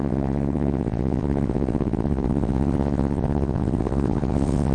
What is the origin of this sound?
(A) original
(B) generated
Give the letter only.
B